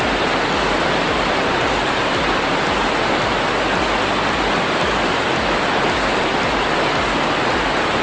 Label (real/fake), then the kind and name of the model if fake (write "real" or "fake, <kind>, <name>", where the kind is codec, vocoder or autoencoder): real